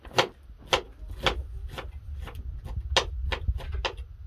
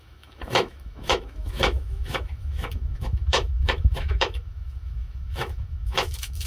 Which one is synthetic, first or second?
second